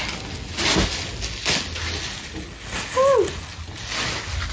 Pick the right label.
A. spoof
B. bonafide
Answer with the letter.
B